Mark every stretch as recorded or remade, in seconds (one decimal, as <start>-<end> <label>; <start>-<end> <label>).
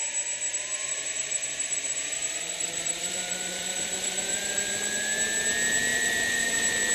0.0-0.5 recorded; 0.5-4.6 remade; 4.6-5.9 recorded; 5.9-6.5 remade; 6.5-6.9 recorded